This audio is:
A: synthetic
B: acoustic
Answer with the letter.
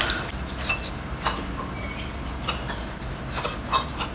B